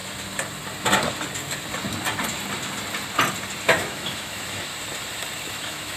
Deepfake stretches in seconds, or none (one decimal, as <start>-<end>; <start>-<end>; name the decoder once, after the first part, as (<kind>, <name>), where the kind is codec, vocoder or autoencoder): 3.6-4.7 (autoencoder, DAC-VAE); 5.5-6.0